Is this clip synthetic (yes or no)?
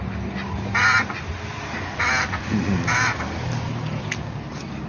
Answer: no